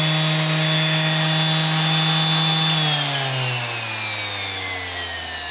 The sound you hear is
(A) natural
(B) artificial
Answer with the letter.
A